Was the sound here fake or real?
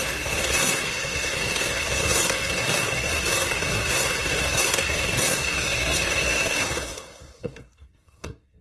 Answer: fake